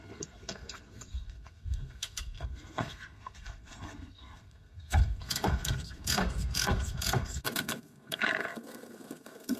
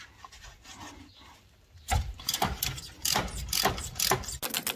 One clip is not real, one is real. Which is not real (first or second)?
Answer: first